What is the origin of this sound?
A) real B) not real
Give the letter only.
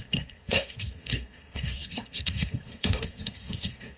B